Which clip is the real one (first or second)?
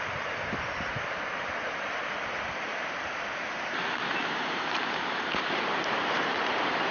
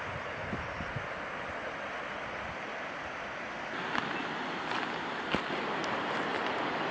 second